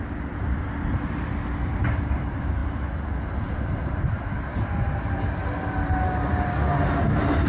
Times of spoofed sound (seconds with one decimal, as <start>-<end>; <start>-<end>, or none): none